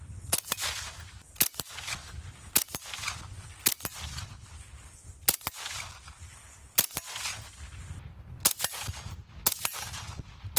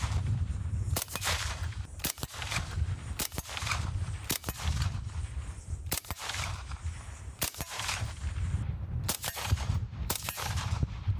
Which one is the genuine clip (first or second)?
first